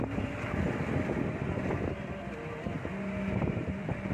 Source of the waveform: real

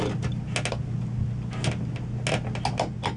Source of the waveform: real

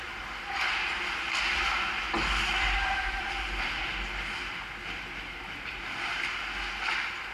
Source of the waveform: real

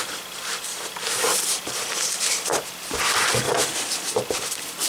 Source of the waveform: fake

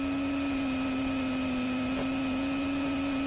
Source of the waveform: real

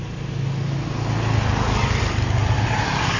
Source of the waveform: real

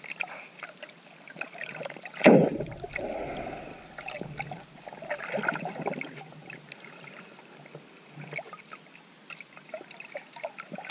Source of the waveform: real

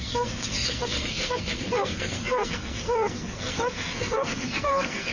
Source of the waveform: fake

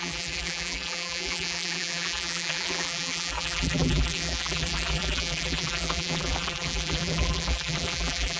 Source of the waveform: fake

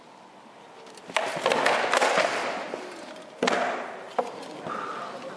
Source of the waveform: real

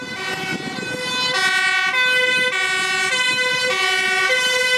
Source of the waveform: real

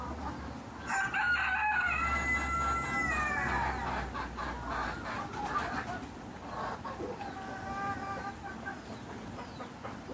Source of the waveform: real